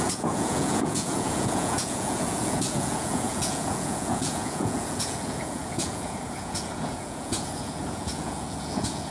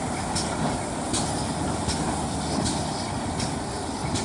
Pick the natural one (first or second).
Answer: second